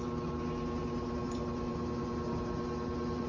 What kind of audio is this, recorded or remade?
recorded